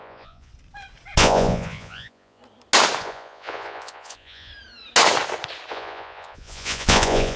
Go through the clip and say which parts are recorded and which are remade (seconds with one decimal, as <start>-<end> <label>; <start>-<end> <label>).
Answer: 0.0-0.5 remade; 0.5-1.2 recorded; 1.2-2.4 remade; 2.4-3.0 recorded; 3.0-4.5 remade; 4.5-5.7 recorded; 5.7-7.4 remade